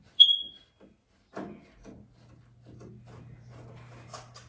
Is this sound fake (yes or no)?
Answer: no